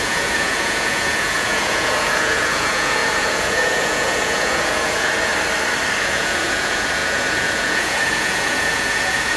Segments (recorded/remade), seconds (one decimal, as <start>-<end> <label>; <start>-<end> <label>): 0.0-5.3 remade; 5.3-6.0 recorded; 6.0-9.4 remade